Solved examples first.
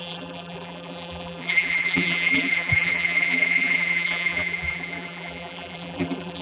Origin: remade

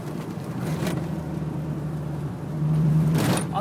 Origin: remade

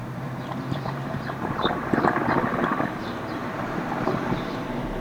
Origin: remade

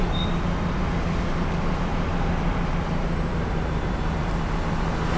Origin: remade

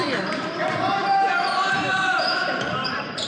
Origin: remade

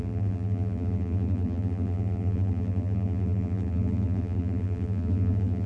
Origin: remade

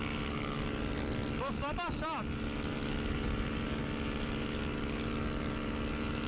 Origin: recorded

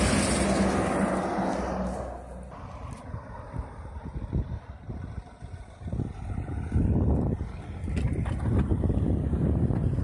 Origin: recorded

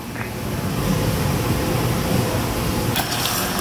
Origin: recorded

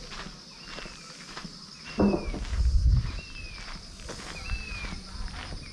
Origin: recorded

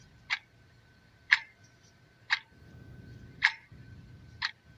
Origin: remade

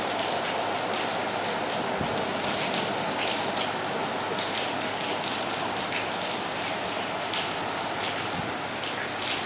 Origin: recorded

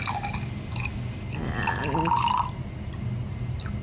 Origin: recorded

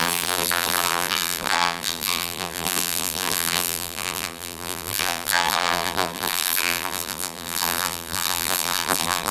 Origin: remade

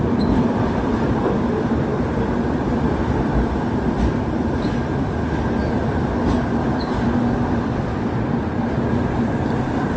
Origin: remade